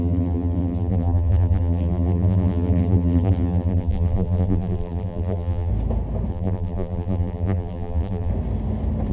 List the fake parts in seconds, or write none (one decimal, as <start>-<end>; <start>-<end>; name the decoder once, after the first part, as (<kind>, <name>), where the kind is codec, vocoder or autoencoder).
0.0-5.7 (vocoder, BigVGAN v2); 6.3-8.3

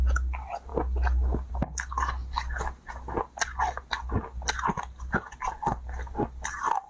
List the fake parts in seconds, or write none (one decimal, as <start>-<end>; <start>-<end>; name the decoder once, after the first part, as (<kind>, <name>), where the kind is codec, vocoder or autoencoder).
none

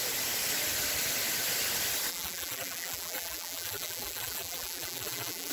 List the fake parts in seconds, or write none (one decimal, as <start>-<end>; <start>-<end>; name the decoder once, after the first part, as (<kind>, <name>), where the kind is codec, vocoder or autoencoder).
2.1-5.5 (vocoder, BigVGAN v2)

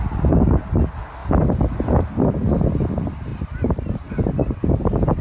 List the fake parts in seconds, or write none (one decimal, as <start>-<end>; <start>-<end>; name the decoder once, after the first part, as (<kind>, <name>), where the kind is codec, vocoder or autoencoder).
1.2-1.7 (vocoder, BigVGAN v2); 3.3-4.1

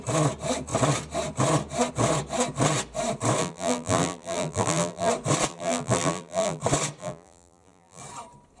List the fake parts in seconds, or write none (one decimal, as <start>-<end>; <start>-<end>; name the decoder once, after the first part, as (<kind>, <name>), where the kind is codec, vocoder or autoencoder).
3.4-5.1 (vocoder, BigVGAN v2); 5.5-6.6; 7.0-8.0

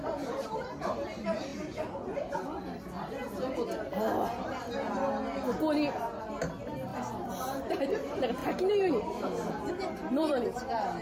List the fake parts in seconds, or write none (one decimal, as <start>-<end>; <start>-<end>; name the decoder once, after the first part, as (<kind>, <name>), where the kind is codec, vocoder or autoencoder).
0.0-1.5 (vocoder, BigVGAN v2); 6.2-11.0